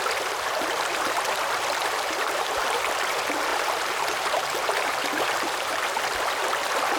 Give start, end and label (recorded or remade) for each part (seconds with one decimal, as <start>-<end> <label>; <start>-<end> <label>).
0.0-1.8 recorded; 1.8-2.8 remade; 2.8-3.5 recorded; 3.5-5.8 remade; 5.8-7.0 recorded